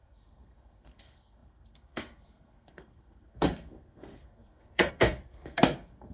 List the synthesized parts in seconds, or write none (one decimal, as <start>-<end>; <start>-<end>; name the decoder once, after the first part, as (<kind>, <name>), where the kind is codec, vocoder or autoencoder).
0.0-6.1 (codec, SNAC)